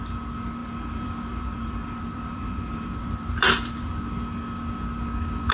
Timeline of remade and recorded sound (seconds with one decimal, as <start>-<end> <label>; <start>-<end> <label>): 0.0-0.6 recorded; 0.6-3.9 remade; 3.9-5.5 recorded